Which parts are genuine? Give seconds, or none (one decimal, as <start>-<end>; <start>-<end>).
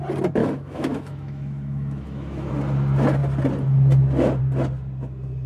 0.0-0.4; 2.5-5.5